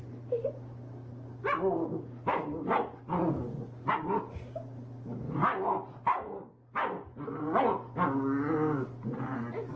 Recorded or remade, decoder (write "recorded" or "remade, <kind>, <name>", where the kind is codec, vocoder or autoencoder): recorded